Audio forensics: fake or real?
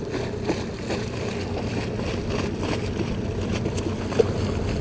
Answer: real